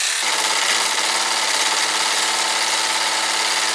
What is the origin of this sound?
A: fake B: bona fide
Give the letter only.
B